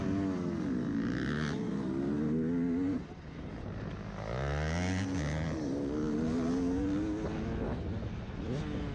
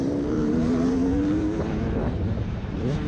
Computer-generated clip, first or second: second